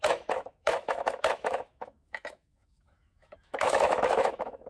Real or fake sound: fake